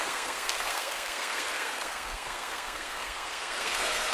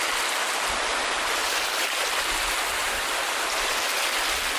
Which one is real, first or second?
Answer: second